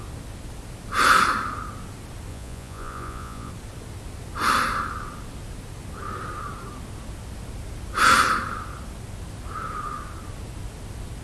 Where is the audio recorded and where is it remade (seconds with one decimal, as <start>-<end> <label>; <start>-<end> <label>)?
0.0-2.3 recorded; 2.3-3.5 remade; 3.5-11.2 recorded